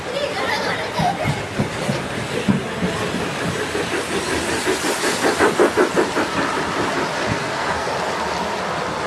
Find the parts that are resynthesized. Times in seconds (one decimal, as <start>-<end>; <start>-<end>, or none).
7.3-7.9